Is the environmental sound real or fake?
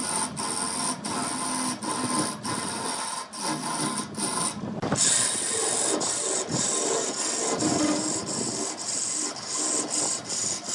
real